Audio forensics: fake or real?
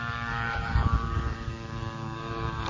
fake